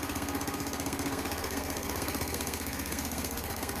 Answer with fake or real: fake